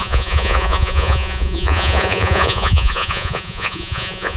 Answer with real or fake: fake